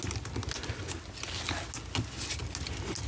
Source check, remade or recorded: recorded